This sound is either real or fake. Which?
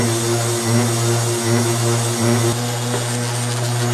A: real